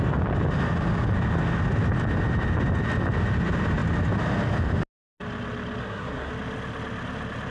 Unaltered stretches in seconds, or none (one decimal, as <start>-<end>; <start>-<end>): 0.0-5.8; 6.3-7.5